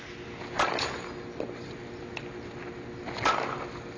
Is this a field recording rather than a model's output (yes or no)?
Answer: yes